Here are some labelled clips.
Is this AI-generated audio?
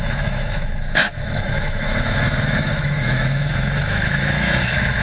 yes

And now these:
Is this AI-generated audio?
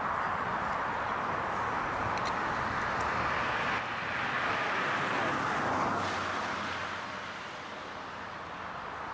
no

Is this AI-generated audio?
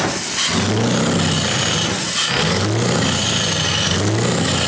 no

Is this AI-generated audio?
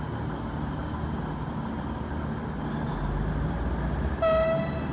no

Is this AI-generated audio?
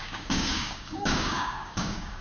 yes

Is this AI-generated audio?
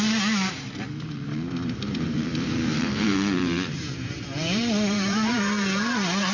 yes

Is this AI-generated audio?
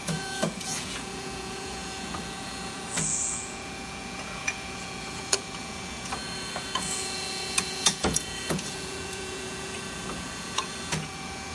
yes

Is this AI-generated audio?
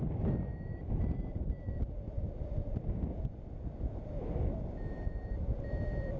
no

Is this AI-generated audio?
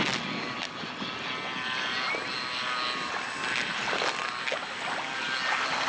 no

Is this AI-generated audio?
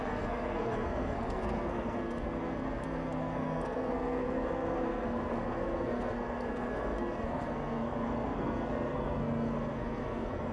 yes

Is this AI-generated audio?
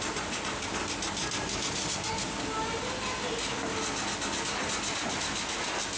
no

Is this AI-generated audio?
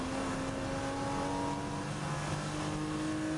no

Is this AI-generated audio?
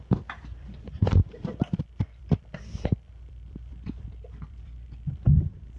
yes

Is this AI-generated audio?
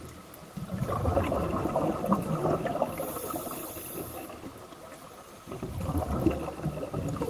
no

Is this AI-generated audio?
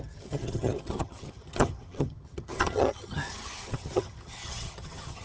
yes